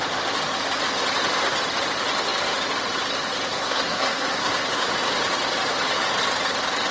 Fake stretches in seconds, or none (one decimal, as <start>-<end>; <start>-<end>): 3.5-4.9

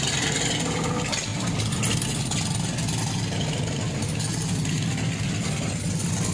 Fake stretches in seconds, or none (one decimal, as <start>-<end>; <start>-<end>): none

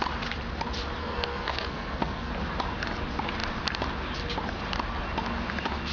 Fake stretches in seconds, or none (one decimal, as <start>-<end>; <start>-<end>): 1.0-2.3